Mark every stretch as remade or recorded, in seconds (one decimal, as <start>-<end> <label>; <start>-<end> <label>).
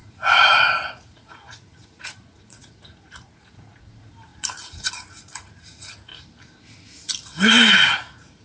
0.0-6.1 remade; 6.1-7.5 recorded; 7.5-8.4 remade